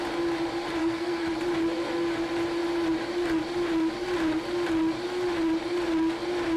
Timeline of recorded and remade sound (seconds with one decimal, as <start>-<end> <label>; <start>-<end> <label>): 0.0-0.8 recorded; 0.8-1.3 remade; 1.3-6.6 recorded